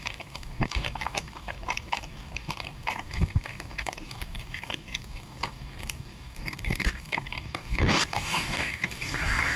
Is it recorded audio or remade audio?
remade